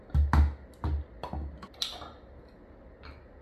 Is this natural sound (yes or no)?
yes